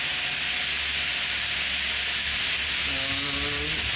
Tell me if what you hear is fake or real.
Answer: real